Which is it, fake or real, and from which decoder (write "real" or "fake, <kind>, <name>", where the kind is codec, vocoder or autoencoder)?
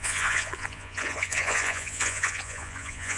fake, vocoder, Vocos